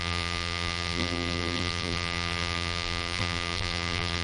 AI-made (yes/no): yes